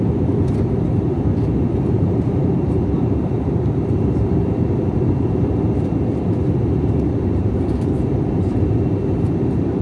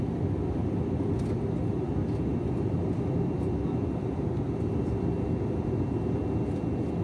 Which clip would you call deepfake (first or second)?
first